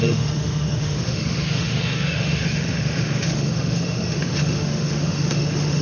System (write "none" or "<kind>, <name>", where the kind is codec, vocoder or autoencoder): autoencoder, DAC-VAE